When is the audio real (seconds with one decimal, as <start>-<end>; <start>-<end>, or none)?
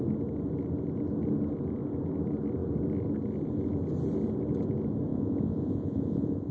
0.0-5.1